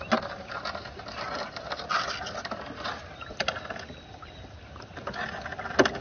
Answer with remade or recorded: recorded